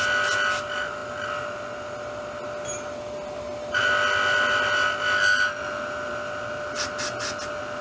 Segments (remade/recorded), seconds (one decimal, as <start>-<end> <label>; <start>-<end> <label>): 0.0-7.8 recorded